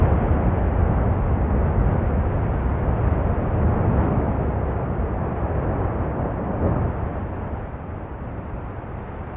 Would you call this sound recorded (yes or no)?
yes